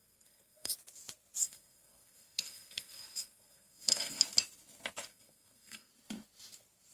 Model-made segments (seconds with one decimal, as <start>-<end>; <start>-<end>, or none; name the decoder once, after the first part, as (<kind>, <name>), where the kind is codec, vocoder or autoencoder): 0.0-0.7 (codec, SNAC); 1.4-4.2; 5.1-5.9